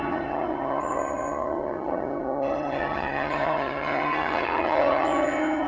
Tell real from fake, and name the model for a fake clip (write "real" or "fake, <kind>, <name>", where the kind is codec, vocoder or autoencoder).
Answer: fake, vocoder, HiFi-GAN